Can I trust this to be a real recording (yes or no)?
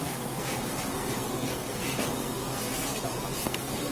no